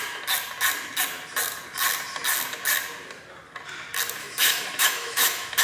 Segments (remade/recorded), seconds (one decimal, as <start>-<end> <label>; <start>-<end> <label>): 0.0-4.2 recorded; 4.2-5.6 remade